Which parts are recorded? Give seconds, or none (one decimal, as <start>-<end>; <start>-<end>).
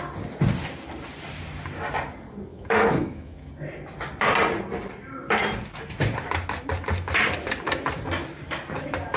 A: 0.0-2.5; 3.5-9.2